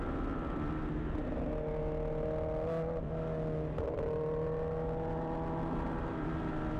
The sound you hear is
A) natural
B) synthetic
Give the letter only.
A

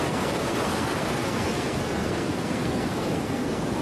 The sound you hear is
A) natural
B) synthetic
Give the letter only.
B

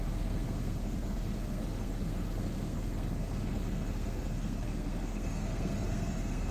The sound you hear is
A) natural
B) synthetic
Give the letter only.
B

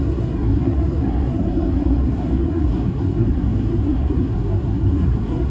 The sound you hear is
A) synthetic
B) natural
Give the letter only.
A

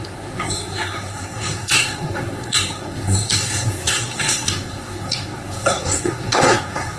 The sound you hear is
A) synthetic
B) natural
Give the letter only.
A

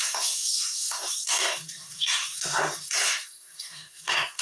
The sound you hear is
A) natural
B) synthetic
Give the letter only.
B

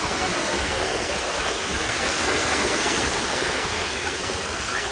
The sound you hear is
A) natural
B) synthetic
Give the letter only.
B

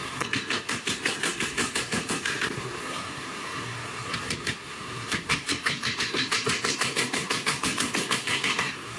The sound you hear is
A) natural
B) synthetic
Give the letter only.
B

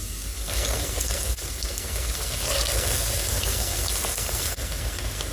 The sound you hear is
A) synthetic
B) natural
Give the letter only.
A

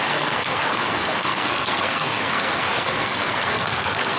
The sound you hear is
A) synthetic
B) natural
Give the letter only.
A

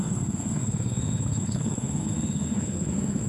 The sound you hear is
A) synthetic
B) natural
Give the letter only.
A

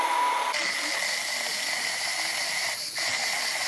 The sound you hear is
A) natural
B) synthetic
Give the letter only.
A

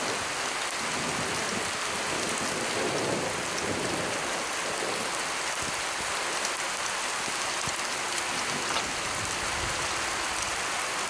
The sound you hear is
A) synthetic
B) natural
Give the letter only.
B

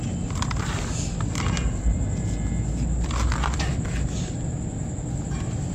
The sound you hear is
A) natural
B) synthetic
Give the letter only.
A